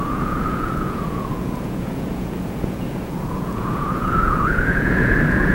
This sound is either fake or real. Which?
fake